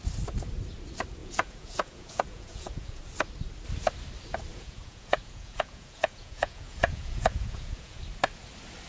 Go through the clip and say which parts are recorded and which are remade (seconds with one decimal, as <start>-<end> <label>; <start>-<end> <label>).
0.0-1.2 recorded; 1.2-3.0 remade; 3.0-4.5 recorded; 4.5-8.0 remade; 8.0-8.9 recorded